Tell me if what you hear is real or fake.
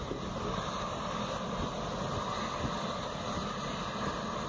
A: real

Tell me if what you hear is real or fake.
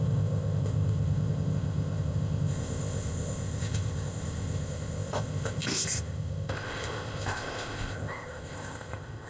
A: fake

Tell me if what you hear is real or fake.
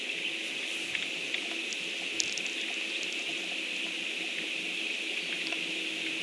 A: real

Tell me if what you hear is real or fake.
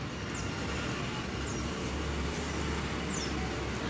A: real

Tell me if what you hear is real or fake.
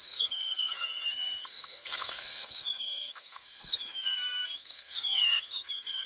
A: fake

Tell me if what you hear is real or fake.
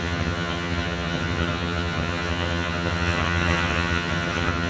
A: fake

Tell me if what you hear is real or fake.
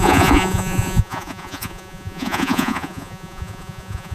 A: fake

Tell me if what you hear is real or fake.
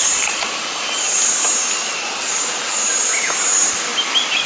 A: real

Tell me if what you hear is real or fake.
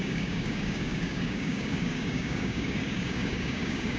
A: fake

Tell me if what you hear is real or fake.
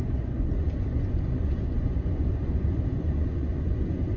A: fake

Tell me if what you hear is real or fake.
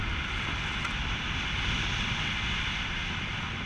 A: real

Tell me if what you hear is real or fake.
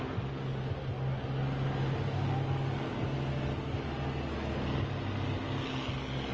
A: real